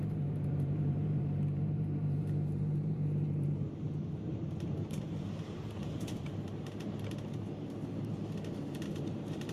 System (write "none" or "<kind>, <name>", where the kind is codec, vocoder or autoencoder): vocoder, BigVGAN v2